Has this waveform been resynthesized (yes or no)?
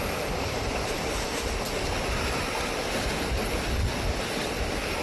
no